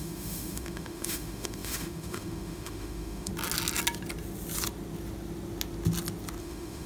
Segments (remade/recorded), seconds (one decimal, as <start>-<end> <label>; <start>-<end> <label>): 0.0-3.3 remade; 3.3-6.4 recorded; 6.4-6.9 remade